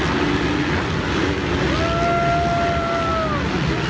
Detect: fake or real real